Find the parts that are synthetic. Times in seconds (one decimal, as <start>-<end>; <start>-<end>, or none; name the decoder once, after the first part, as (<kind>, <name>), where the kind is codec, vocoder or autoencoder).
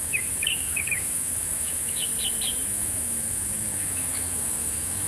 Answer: 0.0-2.1 (autoencoder, DAC-VAE); 2.7-5.1